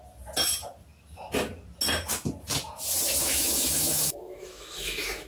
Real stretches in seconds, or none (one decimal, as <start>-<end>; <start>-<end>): 0.0-3.2